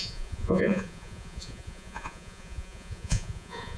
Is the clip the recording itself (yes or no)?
no